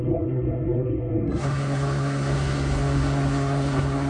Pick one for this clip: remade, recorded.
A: remade